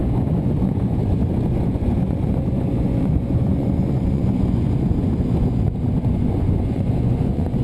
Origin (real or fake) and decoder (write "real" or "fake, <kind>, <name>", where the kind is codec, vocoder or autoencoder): fake, vocoder, Vocos